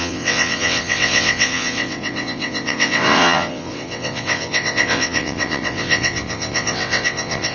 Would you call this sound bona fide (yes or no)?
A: no